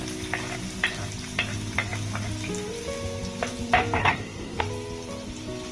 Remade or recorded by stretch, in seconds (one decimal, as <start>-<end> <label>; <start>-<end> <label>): 0.0-4.0 recorded; 4.0-4.6 remade; 4.6-5.7 recorded

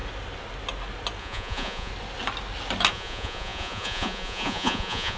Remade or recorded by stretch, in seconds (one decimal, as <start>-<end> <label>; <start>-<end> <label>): 0.0-1.2 recorded; 1.2-1.9 remade; 1.9-2.9 recorded; 2.9-5.2 remade

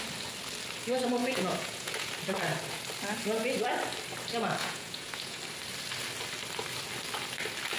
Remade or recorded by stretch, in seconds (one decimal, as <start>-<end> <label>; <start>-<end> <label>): 0.0-1.2 recorded; 1.2-2.1 remade; 2.1-4.6 recorded; 4.6-5.4 remade; 5.4-7.8 recorded

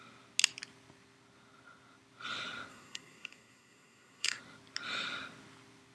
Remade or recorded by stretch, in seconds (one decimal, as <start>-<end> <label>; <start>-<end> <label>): 0.0-2.7 recorded; 2.7-4.4 remade; 4.4-5.9 recorded

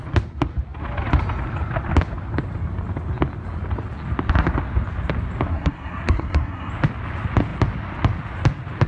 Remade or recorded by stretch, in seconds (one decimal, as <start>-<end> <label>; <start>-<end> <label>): 0.0-5.5 recorded; 5.5-6.7 remade; 6.7-8.9 recorded

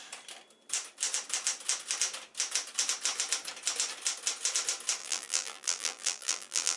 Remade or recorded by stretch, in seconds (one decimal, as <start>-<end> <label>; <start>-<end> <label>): 0.0-5.0 recorded; 5.0-6.8 remade

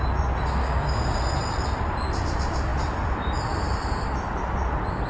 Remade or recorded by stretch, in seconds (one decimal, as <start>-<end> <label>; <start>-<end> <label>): 0.0-0.6 recorded; 0.6-1.2 remade; 1.2-5.1 recorded